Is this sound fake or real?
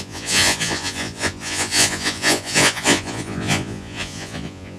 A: fake